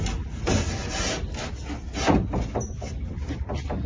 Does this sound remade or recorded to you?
recorded